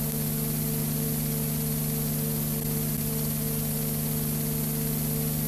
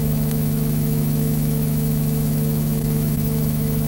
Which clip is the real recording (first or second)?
first